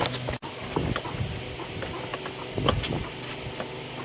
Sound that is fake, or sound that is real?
real